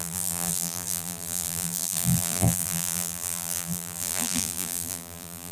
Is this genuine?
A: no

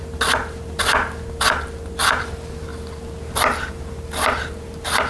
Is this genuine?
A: yes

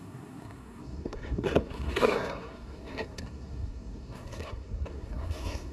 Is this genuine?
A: no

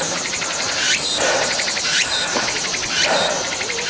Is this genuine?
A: no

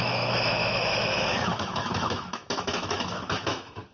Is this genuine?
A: no